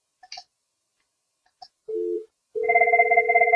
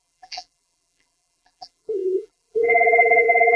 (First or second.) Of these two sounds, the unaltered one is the first